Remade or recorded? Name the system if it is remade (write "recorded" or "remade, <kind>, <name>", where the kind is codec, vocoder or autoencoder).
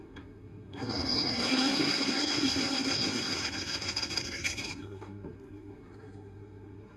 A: remade, codec, SNAC